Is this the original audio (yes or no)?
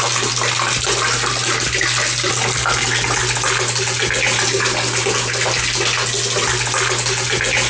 yes